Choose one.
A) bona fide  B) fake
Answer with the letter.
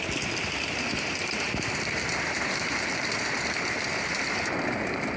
B